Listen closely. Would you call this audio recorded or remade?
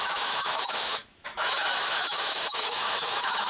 remade